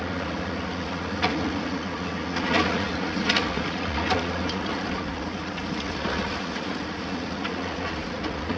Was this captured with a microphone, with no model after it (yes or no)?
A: no